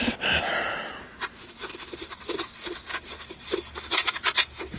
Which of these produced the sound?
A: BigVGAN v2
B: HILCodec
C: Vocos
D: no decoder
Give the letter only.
D